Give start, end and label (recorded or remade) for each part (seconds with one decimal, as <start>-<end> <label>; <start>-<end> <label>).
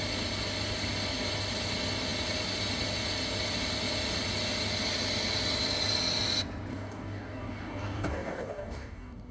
0.0-6.7 recorded; 6.7-9.3 remade